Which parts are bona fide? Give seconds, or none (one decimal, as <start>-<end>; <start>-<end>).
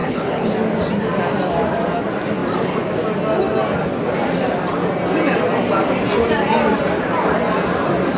0.5-8.2